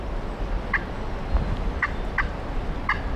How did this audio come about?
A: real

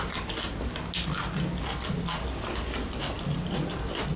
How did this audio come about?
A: real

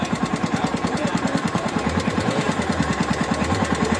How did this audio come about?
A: fake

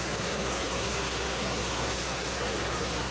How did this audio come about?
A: fake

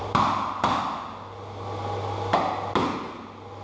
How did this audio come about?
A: real